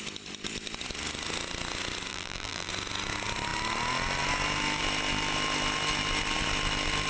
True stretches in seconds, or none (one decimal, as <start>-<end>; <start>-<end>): 0.0-2.1; 2.7-7.1